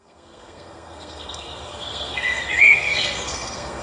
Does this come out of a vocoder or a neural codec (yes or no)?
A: yes